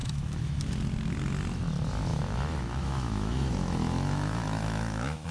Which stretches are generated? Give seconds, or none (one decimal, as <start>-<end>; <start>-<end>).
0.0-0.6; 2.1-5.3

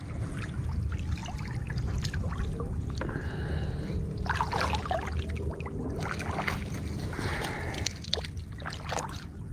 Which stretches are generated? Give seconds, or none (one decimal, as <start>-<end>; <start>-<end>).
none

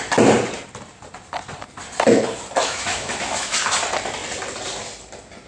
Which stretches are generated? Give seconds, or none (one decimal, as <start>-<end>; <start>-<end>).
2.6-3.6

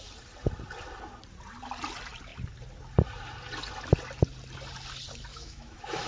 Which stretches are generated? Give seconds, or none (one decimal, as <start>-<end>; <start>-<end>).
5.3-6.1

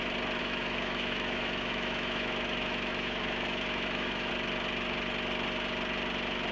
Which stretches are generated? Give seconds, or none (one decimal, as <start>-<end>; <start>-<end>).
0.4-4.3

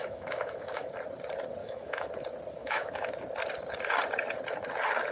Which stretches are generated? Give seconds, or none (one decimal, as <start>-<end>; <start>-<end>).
0.0-0.9; 1.6-2.1; 2.6-3.1